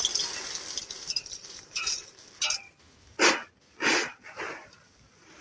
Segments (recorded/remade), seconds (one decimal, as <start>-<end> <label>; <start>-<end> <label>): 0.0-0.8 recorded; 0.8-2.6 remade; 2.6-4.1 recorded; 4.1-5.4 remade